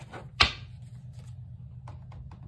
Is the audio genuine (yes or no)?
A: yes